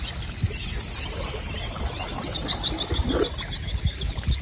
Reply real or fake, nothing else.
real